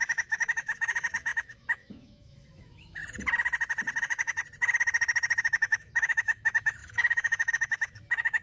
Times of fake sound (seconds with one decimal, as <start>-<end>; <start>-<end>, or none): 0.0-3.0; 4.0-4.4; 5.4-8.4